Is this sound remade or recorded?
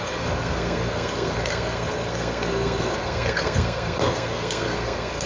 remade